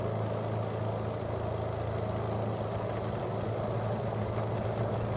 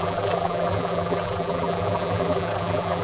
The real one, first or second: first